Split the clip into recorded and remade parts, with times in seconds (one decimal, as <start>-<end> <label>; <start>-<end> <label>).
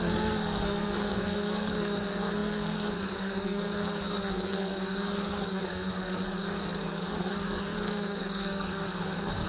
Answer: 0.0-9.5 remade